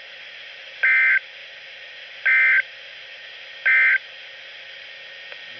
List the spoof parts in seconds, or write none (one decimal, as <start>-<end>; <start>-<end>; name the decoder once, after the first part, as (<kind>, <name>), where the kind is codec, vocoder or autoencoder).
none